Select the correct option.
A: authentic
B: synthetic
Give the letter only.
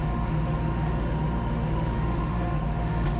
B